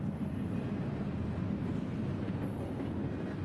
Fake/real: real